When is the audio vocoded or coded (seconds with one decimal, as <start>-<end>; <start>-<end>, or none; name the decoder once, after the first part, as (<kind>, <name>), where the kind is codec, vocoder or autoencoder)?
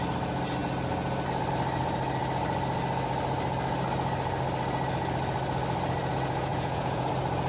6.5-7.1 (vocoder, Vocos)